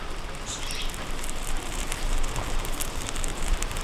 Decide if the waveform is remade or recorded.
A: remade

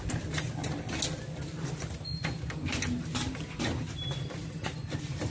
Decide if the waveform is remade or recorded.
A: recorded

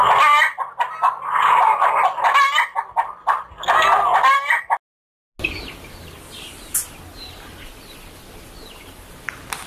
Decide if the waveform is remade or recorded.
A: recorded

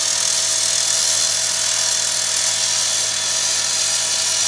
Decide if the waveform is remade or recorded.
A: recorded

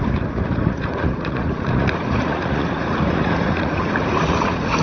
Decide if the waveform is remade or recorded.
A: remade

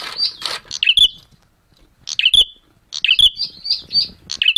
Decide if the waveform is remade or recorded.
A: recorded